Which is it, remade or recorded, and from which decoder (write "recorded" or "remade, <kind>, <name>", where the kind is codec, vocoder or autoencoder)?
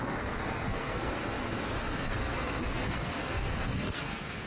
remade, codec, SNAC